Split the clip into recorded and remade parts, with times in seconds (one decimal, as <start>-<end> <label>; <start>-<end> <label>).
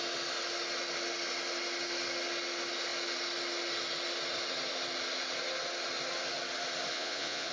0.0-6.9 recorded; 6.9-7.5 remade